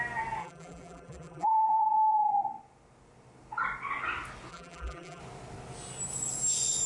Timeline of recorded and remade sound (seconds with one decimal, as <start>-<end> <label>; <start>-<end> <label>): 0.0-0.4 recorded; 0.4-1.8 remade; 1.8-4.5 recorded; 4.5-5.2 remade; 5.2-6.9 recorded